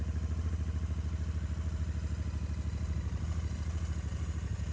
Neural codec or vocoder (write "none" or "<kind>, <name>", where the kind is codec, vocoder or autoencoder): none